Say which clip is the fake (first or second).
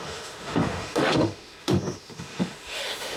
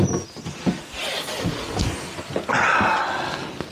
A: first